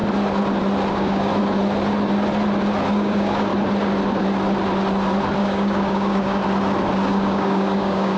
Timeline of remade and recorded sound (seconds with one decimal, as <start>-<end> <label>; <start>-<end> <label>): 0.0-0.9 recorded; 0.9-1.3 remade; 1.3-2.9 recorded; 2.9-3.5 remade; 3.5-5.4 recorded; 5.4-6.4 remade; 6.4-7.1 recorded; 7.1-8.2 remade

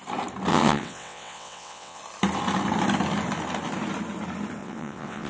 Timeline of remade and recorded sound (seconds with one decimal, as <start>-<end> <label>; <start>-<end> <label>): 0.0-0.5 recorded; 0.5-2.0 remade; 2.0-4.6 recorded; 4.6-5.3 remade

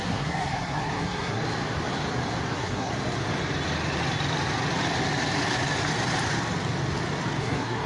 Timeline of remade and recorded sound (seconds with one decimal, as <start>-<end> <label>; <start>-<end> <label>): 0.0-1.4 remade; 1.4-2.5 recorded; 2.5-2.9 remade; 2.9-7.4 recorded; 7.4-7.9 remade